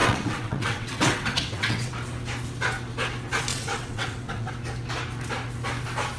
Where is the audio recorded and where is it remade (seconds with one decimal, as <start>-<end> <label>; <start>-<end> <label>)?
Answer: 0.0-1.9 remade; 1.9-3.5 recorded; 3.5-4.5 remade; 4.5-6.2 recorded